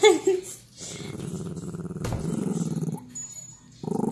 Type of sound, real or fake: real